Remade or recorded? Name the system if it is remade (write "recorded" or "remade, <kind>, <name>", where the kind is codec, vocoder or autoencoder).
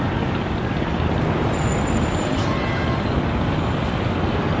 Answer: recorded